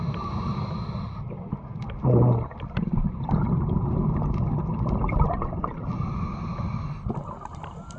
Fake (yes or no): no